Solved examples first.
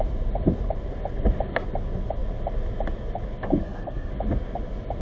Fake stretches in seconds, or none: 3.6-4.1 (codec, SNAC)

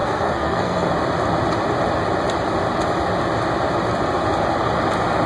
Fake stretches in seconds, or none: 0.0-0.9 (codec, SNAC)

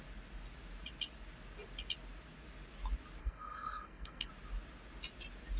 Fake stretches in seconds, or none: 3.2-4.3 (codec, SNAC)

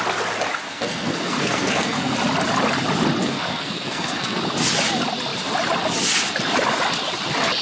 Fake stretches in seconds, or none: 0.7-2.1 (codec, SNAC); 3.2-4.4

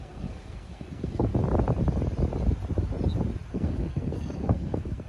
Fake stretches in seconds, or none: 0.0-1.3 (codec, SNAC); 3.5-5.1

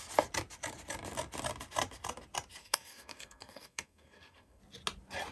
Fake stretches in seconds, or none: 2.6-4.6 (codec, SNAC)

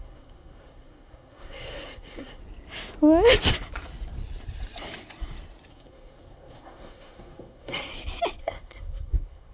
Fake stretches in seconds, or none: 0.0-2.4 (codec, SNAC); 5.7-7.9; 8.4-9.5

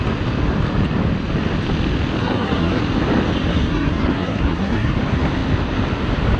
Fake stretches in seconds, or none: 2.2-2.8 (codec, SNAC); 3.5-5.0